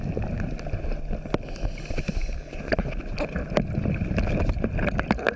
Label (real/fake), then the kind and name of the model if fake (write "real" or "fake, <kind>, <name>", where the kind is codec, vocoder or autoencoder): real